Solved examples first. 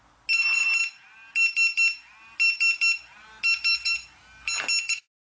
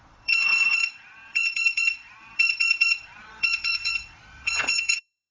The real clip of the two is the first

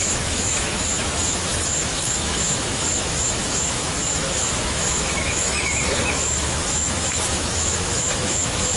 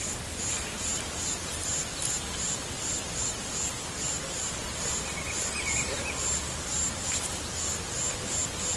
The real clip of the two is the second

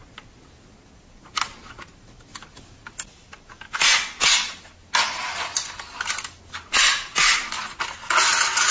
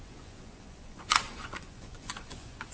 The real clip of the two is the first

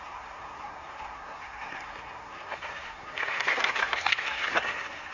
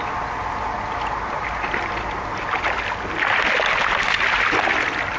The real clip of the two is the second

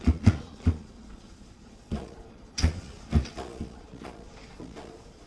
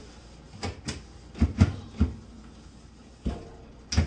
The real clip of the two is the second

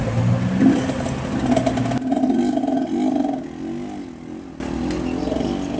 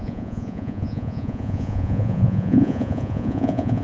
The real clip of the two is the first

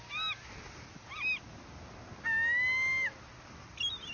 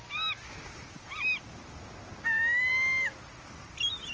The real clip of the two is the first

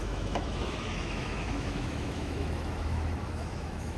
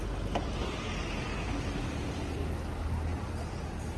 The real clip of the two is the second